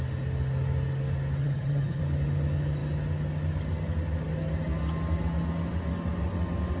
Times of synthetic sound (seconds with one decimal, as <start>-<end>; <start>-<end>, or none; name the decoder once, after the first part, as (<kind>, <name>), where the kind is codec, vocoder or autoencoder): 1.4-2.0 (vocoder, HiFi-GAN)